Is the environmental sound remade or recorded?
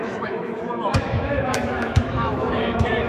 remade